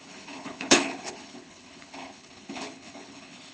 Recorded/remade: remade